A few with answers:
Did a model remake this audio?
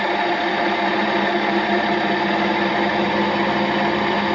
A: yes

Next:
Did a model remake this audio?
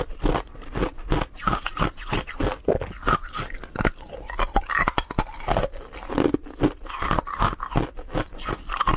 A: no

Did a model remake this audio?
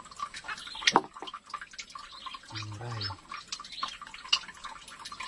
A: no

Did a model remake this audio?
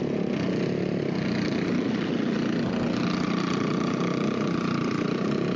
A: no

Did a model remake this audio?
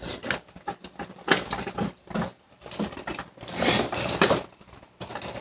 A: no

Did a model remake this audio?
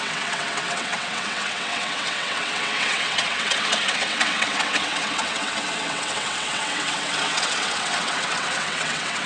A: yes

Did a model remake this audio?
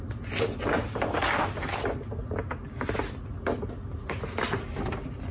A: no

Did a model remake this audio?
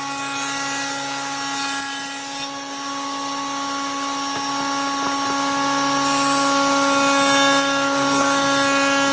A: no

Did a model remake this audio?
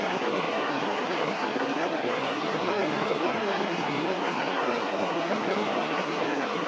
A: yes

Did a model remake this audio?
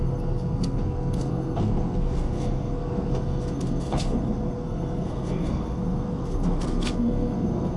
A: yes